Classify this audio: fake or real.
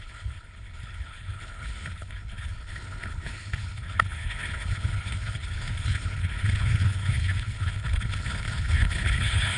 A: fake